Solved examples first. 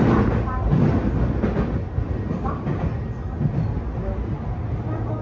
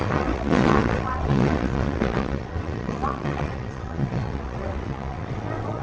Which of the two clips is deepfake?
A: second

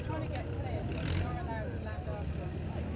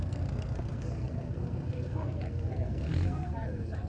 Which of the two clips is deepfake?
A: second